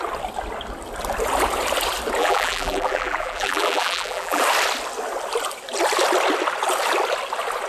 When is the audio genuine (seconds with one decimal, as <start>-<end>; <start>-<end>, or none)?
0.0-2.2; 4.4-7.7